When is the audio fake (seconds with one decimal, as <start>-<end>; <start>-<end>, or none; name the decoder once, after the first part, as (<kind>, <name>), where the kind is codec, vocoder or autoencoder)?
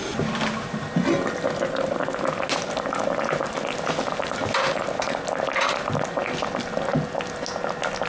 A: none